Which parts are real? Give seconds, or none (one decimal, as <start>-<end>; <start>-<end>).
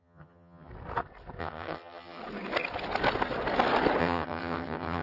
0.7-1.4; 2.2-4.0